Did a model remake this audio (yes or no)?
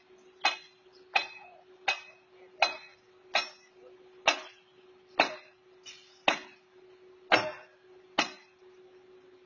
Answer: no